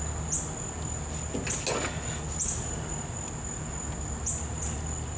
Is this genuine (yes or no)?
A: yes